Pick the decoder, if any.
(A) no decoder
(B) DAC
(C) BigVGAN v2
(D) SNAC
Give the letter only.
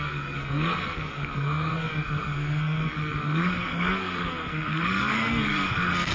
D